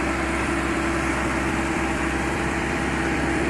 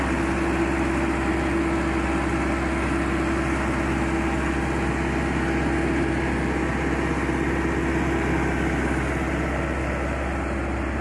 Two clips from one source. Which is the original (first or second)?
second